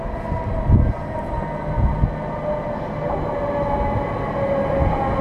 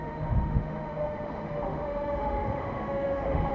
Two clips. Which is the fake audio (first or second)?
second